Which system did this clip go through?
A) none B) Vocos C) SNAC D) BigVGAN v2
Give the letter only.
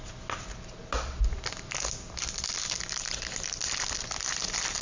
A